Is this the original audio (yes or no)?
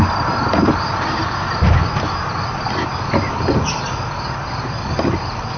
yes